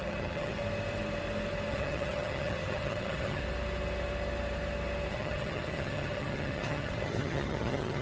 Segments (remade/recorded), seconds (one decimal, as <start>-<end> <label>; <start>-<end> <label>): 0.0-0.6 remade; 0.6-1.7 recorded; 1.7-3.4 remade; 3.4-5.1 recorded; 5.1-8.0 remade